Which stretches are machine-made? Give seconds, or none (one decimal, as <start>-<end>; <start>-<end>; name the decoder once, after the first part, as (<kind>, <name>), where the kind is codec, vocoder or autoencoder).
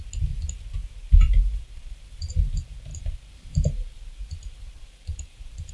0.8-2.3 (vocoder, BigVGAN v2); 2.9-5.7